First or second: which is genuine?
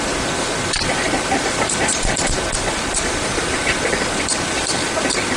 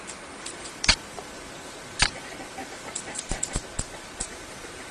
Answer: second